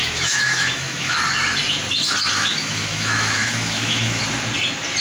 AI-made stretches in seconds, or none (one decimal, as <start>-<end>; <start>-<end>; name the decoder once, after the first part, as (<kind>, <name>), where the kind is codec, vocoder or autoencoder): 0.0-1.1 (autoencoder, DAC-VAE); 2.3-4.2